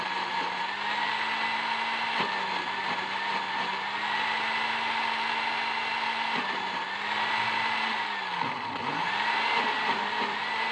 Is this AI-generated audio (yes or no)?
no